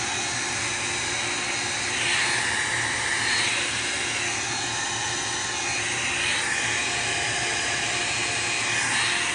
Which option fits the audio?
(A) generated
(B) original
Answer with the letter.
B